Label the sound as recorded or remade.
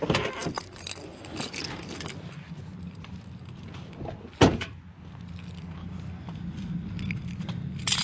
recorded